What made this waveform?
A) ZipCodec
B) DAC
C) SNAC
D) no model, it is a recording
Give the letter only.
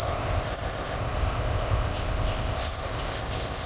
A